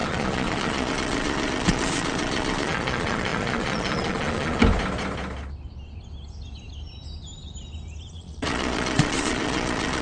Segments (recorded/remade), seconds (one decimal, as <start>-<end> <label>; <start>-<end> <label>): 0.0-4.6 remade; 4.6-8.1 recorded; 8.1-10.0 remade